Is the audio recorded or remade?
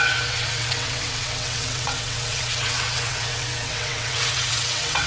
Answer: remade